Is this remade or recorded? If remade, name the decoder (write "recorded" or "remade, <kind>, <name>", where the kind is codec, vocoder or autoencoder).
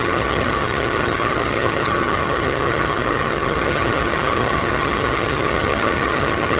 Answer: remade, vocoder, HiFi-GAN